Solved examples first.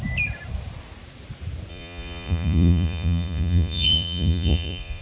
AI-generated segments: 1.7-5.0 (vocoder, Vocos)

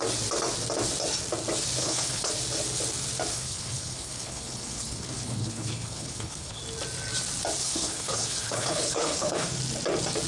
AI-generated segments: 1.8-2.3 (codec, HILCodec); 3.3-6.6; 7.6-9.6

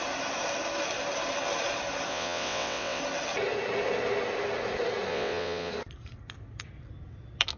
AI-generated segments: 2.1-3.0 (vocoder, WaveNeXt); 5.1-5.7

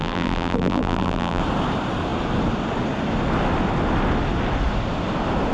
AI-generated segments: 0.0-1.4 (vocoder, BigVGAN v2)

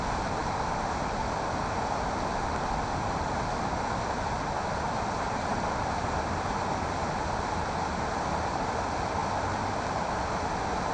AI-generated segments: none

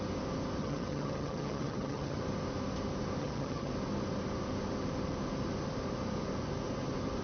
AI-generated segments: 0.6-2.2 (vocoder, HiFi-GAN); 3.2-3.7